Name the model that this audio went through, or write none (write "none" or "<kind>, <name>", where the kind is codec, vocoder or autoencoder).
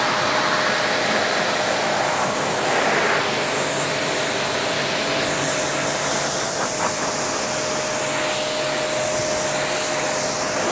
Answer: none